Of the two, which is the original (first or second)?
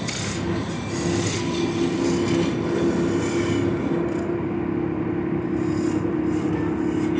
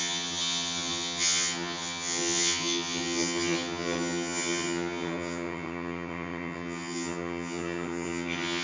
first